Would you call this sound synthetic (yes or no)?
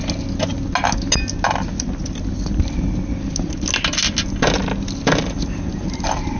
no